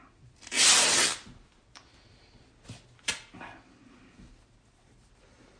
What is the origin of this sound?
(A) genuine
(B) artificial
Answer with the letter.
A